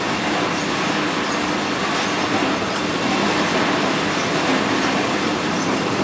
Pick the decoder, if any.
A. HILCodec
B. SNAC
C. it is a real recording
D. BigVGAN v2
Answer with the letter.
C